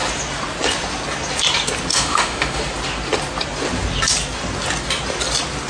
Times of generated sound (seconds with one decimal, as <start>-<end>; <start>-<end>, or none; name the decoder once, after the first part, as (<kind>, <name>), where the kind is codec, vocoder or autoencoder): 1.9-2.6 (autoencoder, DAC-VAE)